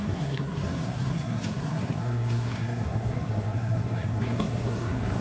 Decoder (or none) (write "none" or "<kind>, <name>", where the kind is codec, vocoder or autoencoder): codec, SNAC